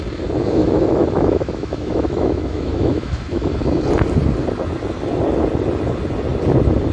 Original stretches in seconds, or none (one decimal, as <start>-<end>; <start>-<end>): 0.0-0.6; 3.5-6.9